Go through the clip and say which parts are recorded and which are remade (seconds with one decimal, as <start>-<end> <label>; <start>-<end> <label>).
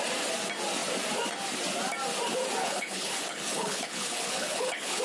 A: 0.0-2.6 recorded; 2.6-5.0 remade